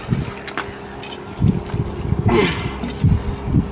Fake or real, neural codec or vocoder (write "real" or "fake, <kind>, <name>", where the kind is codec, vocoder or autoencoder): real